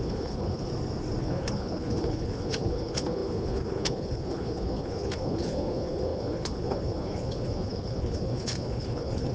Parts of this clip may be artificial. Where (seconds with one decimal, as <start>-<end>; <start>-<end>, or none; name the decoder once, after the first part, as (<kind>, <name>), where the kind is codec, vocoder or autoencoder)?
0.0-0.7 (codec, HILCodec); 1.2-9.3